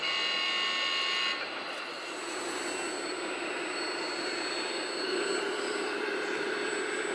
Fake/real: real